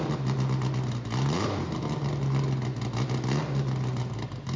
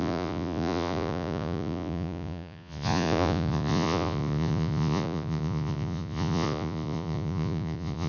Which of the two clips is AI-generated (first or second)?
second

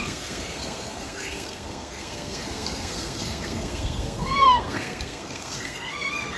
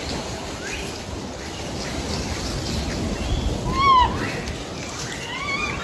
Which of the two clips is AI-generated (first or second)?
first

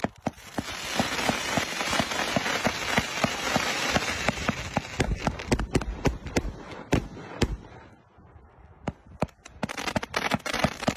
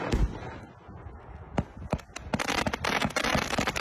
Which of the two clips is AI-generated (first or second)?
first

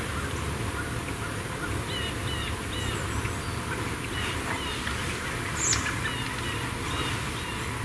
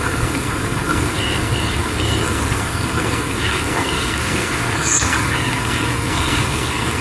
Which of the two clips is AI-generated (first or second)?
second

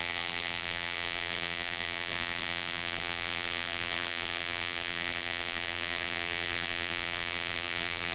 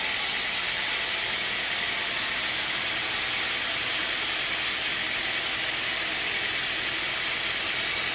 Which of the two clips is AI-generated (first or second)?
first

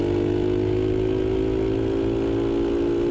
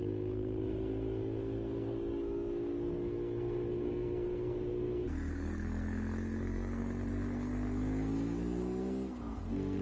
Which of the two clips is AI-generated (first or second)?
second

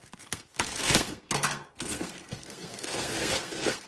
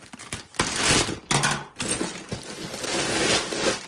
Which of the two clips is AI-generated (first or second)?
first